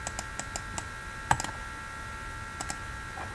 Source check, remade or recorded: recorded